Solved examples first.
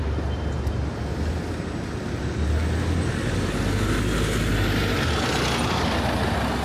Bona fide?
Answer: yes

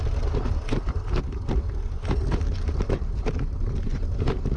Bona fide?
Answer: yes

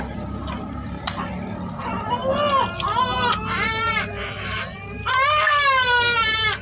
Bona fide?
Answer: yes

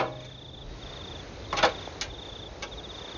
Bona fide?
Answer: yes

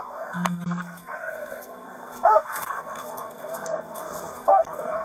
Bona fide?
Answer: no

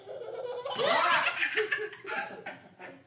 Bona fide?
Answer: yes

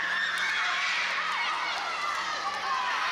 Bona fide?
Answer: no